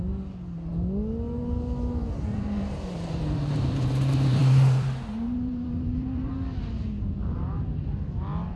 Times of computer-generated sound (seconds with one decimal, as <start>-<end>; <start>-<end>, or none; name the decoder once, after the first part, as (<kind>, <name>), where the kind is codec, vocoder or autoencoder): 2.3-6.3 (vocoder, BigVGAN v2)